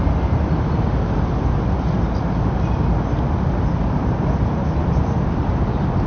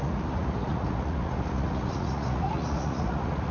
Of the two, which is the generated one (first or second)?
second